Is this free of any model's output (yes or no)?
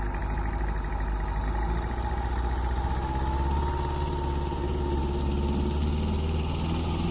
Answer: yes